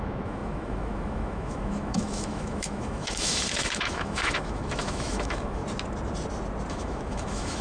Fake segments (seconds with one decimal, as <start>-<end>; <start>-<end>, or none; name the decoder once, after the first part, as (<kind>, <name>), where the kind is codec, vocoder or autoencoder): 0.0-5.6 (autoencoder, DAC-VAE); 6.7-7.6